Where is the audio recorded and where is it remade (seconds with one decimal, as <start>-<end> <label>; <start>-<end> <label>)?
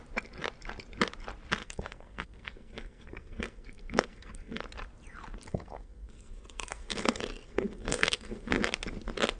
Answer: 0.0-1.6 recorded; 1.6-4.6 remade; 4.6-5.5 recorded; 5.5-8.5 remade; 8.5-9.4 recorded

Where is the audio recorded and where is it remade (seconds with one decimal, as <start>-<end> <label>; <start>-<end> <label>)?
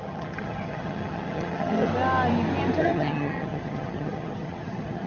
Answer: 0.0-1.9 remade; 1.9-2.8 recorded; 2.8-5.1 remade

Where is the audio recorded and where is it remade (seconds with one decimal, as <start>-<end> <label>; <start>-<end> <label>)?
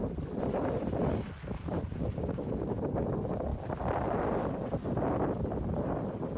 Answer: 0.0-6.4 recorded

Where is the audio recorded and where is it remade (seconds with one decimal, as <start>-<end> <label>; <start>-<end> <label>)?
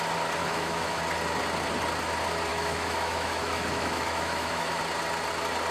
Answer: 0.0-0.4 recorded; 0.4-1.0 remade; 1.0-2.5 recorded; 2.5-4.8 remade; 4.8-5.7 recorded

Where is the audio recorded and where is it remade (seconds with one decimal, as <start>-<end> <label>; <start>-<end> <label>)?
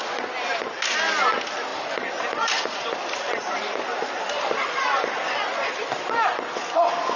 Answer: 0.0-1.7 recorded; 1.7-6.0 remade; 6.0-7.2 recorded